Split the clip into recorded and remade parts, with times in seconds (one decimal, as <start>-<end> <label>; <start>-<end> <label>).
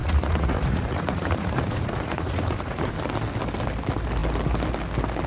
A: 0.0-2.9 remade; 2.9-5.3 recorded